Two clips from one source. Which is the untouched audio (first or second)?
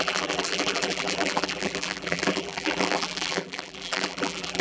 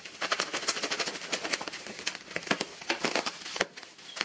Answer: second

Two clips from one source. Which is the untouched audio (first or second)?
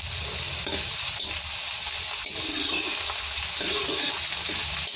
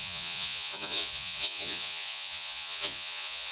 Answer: first